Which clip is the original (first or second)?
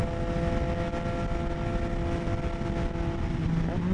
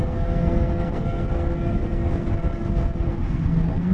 first